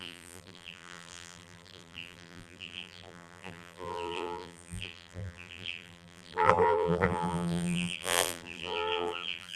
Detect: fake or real fake